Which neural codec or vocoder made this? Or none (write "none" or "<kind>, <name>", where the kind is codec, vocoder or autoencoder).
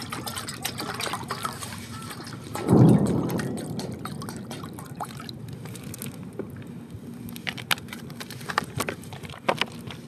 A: none